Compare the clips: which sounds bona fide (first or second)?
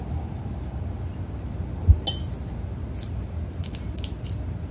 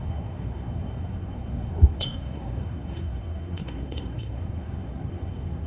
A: first